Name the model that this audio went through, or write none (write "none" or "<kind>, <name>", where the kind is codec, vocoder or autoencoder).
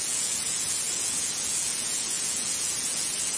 vocoder, Vocos